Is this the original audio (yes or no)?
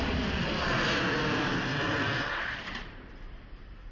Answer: yes